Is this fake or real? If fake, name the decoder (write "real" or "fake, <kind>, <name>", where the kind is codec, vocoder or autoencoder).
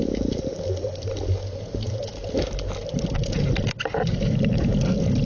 real